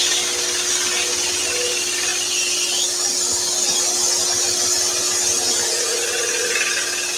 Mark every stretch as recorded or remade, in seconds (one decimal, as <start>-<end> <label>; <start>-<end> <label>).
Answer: 0.0-7.2 recorded